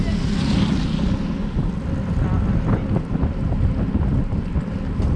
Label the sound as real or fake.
real